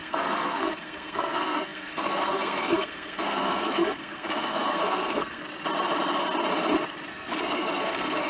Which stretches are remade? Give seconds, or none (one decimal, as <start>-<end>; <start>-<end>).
0.0-5.4; 7.1-8.3